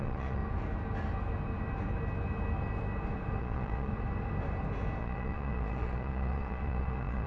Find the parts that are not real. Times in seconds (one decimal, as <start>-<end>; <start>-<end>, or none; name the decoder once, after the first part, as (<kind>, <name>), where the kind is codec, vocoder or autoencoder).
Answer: 0.0-0.4 (vocoder, Vocos); 3.4-3.9; 5.0-7.3